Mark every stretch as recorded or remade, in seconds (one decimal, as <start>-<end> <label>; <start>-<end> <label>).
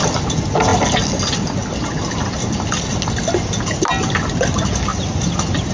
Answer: 0.0-5.7 recorded